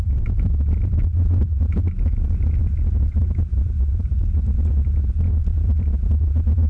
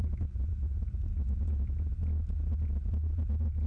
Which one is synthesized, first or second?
first